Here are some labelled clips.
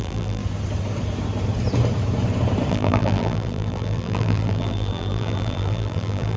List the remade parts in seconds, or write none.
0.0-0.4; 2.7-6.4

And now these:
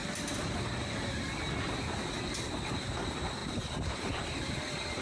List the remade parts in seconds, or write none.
3.0-5.0

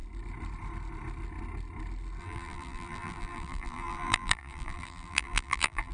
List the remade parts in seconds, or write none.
2.2-5.9

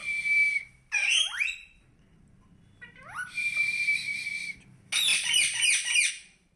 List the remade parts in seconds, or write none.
0.0-4.0; 5.1-6.1

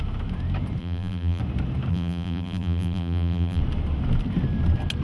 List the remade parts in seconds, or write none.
0.8-1.4; 1.9-3.6

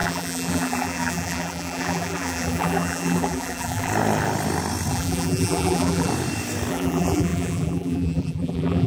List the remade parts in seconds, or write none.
0.0-3.9; 4.9-6.1; 6.7-8.9